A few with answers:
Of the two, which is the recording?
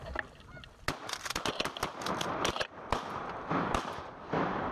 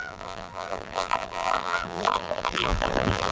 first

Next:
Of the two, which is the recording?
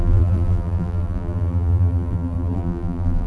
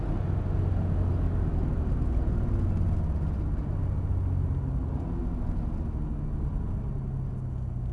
second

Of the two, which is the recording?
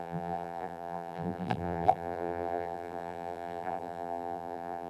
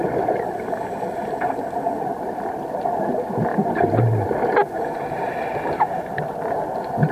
second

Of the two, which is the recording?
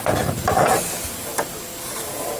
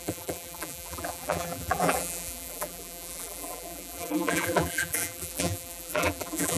first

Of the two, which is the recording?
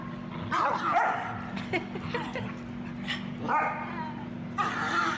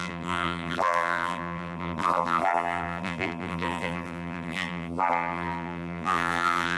first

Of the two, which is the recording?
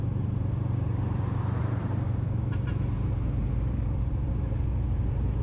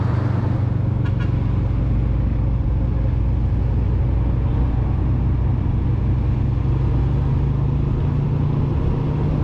second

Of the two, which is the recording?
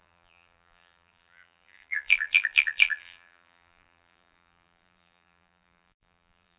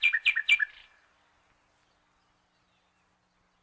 second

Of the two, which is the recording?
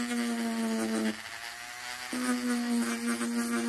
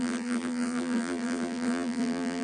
first